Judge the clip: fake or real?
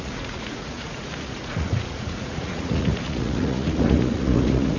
fake